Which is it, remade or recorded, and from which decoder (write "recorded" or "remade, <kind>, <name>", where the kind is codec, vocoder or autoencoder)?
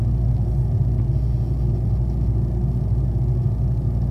recorded